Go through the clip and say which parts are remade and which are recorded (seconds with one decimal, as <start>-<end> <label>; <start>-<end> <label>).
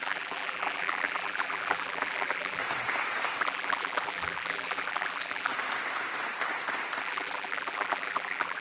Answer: 0.0-2.6 remade; 2.6-3.4 recorded; 3.4-5.5 remade; 5.5-7.0 recorded; 7.0-8.6 remade